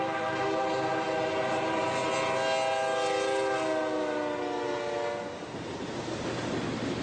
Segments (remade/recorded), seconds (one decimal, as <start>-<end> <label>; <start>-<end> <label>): 0.0-7.0 recorded